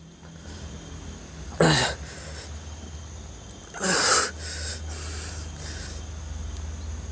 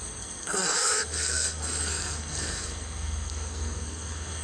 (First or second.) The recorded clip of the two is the first